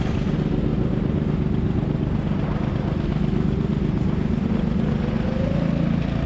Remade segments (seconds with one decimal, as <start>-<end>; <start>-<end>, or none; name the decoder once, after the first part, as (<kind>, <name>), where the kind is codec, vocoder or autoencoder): none